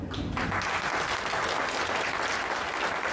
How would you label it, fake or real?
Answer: real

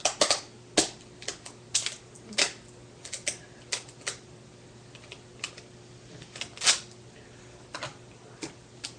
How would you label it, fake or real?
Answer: real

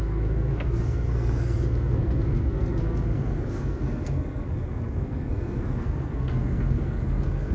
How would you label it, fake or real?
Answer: fake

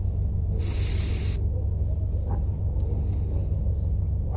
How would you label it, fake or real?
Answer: real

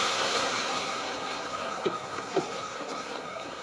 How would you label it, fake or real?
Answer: fake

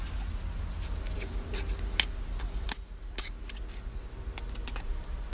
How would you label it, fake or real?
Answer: real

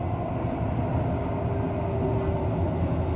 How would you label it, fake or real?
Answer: real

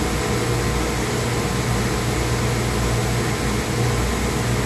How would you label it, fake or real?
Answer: real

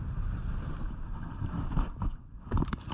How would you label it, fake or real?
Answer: fake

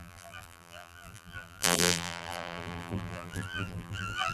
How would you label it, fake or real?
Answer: fake